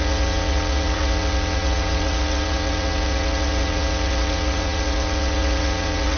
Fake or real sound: fake